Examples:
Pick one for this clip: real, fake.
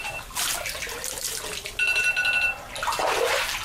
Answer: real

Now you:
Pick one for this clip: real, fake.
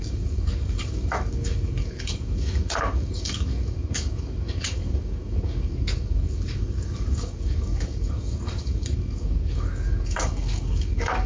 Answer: fake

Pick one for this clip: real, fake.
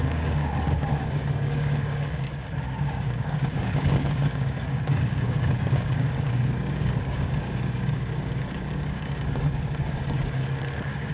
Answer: fake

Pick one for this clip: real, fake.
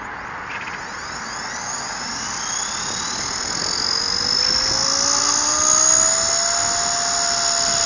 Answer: real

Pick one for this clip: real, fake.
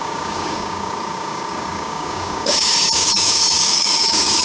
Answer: fake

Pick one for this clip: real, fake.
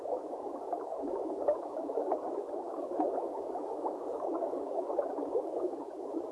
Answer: fake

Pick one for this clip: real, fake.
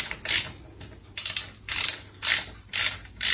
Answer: real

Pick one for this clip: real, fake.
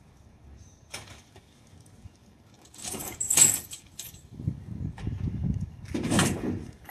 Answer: fake